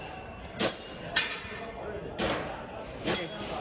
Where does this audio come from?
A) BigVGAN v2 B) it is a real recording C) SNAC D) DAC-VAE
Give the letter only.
B